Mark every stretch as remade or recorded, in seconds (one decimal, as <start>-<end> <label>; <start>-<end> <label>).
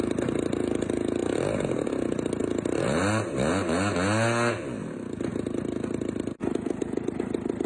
0.0-7.7 recorded